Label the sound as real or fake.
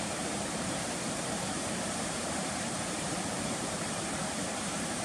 fake